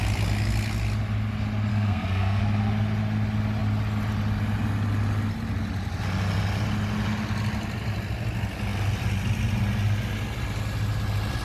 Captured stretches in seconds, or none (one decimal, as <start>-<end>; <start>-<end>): 0.0-1.7; 2.4-11.4